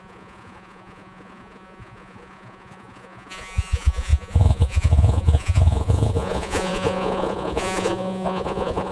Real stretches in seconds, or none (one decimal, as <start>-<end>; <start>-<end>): none